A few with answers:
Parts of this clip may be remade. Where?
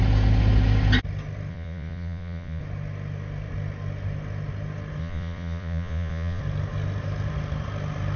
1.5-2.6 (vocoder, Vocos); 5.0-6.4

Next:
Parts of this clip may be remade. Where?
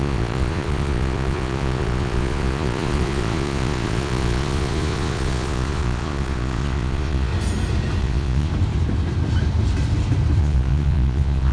0.0-7.3 (vocoder, Vocos); 8.0-8.5; 10.4-11.5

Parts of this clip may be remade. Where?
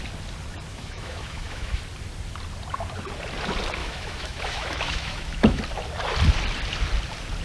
0.7-1.8 (autoencoder, DAC-VAE); 3.8-5.6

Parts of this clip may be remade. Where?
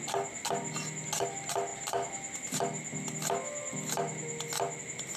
none